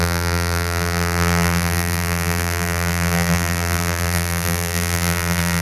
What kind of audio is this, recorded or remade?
remade